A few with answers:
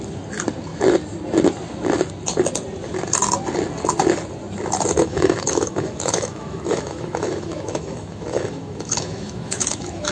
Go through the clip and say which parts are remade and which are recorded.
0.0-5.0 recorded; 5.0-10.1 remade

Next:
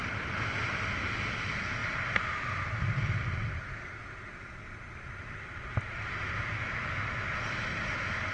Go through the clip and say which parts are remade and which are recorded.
0.0-1.8 recorded; 1.8-2.5 remade; 2.5-8.3 recorded